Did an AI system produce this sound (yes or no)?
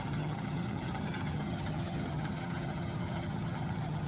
yes